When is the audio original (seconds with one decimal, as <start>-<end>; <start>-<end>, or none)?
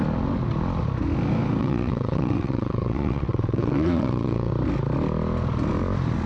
0.0-1.6; 4.5-6.3